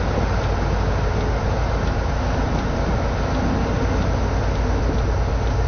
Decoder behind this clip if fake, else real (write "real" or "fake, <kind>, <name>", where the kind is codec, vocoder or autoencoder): real